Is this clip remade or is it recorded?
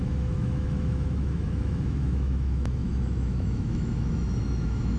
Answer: remade